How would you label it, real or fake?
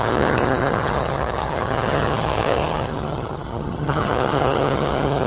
fake